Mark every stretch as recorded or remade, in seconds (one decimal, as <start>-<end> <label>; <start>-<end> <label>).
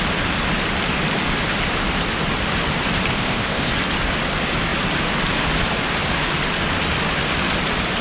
0.0-3.1 recorded; 3.1-3.7 remade; 3.7-8.0 recorded